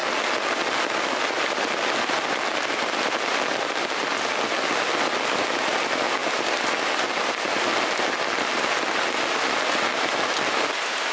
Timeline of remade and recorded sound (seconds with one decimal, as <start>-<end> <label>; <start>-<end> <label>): 0.0-11.1 recorded